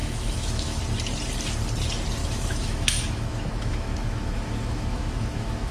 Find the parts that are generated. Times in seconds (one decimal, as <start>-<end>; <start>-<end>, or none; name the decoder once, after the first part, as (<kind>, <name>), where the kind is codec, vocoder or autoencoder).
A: 0.0-0.8 (autoencoder, DAC-VAE); 2.2-5.7